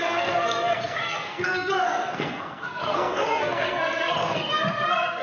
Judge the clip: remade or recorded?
remade